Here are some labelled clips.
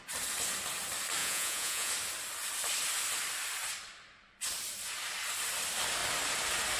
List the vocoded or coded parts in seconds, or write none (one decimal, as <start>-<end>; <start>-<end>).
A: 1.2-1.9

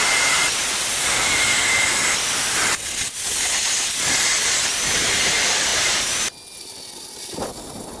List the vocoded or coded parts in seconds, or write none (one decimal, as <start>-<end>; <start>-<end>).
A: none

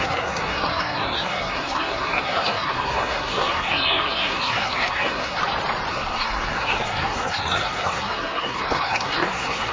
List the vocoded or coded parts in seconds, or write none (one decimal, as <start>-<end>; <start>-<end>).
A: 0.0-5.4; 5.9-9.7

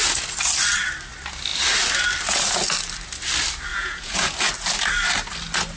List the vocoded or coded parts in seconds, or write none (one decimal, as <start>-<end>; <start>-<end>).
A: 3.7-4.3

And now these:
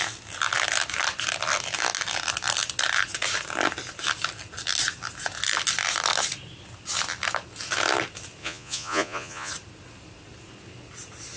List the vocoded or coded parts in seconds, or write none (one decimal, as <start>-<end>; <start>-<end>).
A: 8.4-9.5

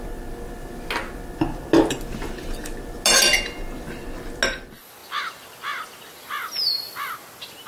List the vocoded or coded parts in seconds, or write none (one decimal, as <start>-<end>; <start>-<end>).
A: none

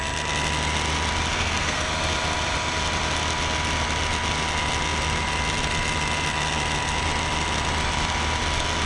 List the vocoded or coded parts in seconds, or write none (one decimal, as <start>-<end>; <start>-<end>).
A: 1.3-1.9

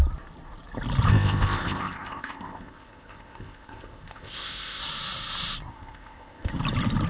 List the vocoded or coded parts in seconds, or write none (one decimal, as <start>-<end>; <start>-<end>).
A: 1.1-4.8; 5.7-6.5